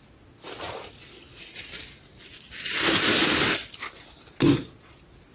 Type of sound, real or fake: real